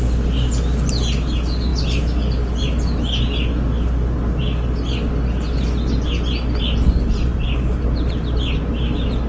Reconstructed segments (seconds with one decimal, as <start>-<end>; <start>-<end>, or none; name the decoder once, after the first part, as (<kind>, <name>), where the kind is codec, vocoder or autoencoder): none